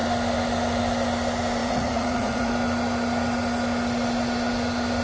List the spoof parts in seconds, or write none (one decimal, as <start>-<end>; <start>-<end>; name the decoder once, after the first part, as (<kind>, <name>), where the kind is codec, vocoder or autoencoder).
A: 1.6-2.5 (vocoder, Vocos)